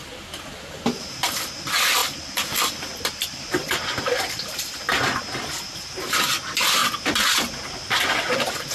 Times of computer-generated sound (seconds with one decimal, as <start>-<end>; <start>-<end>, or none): 2.0-4.8

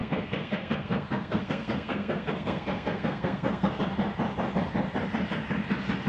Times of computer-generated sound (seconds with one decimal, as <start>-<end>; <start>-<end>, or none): 0.0-3.7

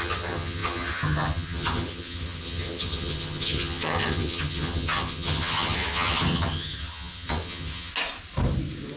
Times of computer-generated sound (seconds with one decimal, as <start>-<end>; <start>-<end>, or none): 0.0-7.9

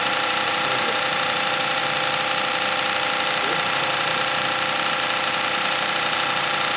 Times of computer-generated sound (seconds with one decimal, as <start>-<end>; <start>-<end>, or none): 0.0-1.8; 3.5-4.1; 5.5-6.8

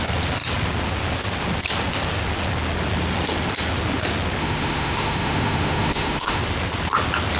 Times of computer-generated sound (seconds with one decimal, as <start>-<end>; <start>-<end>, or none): 4.4-6.4